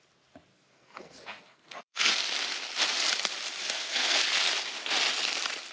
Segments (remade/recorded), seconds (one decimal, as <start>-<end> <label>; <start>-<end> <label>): 0.0-0.5 recorded; 0.5-2.1 remade; 2.1-3.6 recorded; 3.6-4.2 remade; 4.2-5.7 recorded